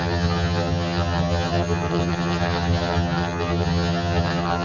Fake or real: fake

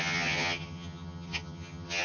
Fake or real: fake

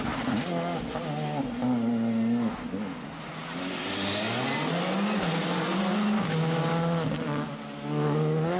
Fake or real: real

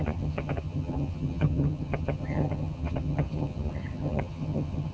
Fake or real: fake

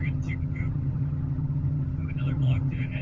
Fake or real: fake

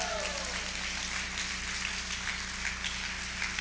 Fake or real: real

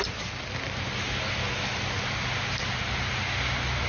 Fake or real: real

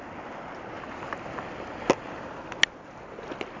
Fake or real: real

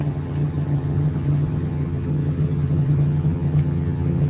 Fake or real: fake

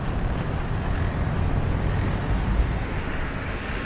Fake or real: real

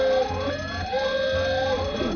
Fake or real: real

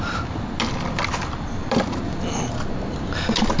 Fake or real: real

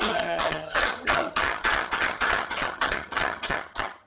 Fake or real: fake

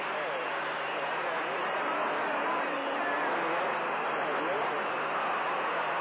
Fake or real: real